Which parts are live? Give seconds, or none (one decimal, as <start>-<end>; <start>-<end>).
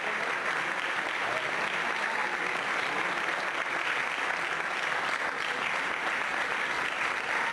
0.0-7.5